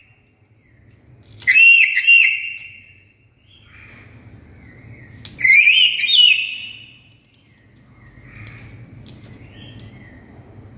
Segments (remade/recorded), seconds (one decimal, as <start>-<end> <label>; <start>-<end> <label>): 0.0-10.8 recorded